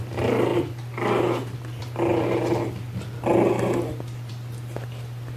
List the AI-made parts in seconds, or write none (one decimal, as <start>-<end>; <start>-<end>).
none

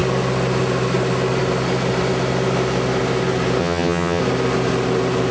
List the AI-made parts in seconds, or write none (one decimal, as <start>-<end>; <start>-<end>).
3.6-4.2

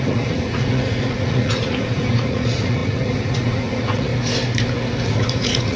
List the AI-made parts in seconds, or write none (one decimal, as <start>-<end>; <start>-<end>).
0.0-4.1; 5.1-5.8

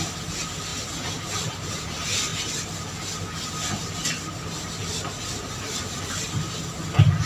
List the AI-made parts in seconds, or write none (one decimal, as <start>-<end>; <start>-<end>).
none

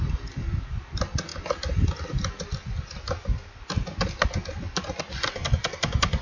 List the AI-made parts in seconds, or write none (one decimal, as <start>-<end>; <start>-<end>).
none

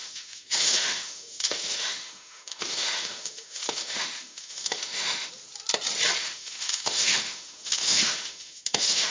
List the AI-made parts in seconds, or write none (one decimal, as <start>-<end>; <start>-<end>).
0.0-5.3; 6.2-9.1